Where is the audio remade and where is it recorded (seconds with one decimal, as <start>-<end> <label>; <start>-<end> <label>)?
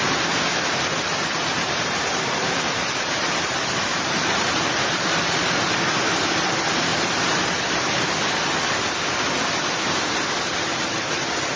0.0-0.5 recorded; 0.5-5.6 remade; 5.6-6.9 recorded; 6.9-8.0 remade; 8.0-10.7 recorded; 10.7-11.6 remade